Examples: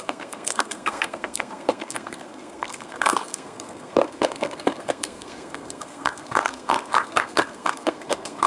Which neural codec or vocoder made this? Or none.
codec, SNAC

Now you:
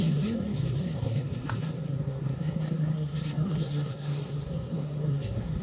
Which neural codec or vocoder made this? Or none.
codec, SNAC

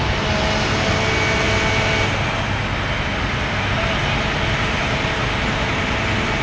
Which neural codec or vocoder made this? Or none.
none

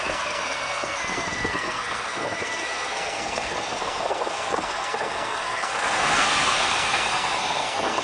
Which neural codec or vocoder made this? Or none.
codec, SNAC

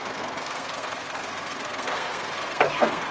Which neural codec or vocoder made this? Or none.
codec, SNAC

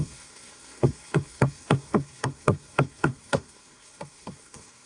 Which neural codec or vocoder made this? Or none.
codec, SNAC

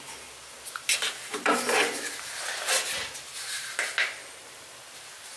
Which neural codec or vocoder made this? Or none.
none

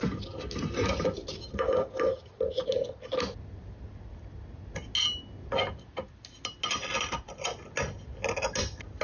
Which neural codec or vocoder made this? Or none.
none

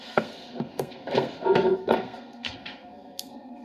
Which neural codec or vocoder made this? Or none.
codec, SNAC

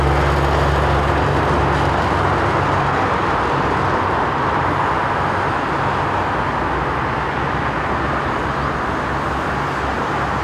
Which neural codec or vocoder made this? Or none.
none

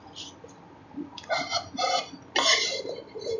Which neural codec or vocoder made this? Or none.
none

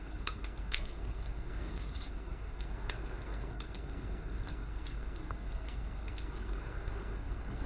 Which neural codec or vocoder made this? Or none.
codec, SNAC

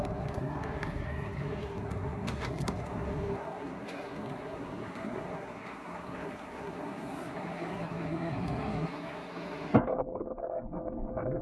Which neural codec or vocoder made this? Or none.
codec, SNAC